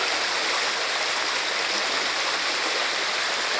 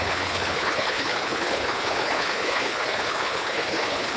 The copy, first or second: second